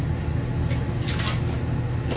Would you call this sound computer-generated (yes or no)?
no